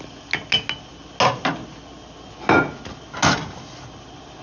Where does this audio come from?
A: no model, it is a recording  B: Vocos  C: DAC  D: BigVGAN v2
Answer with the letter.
A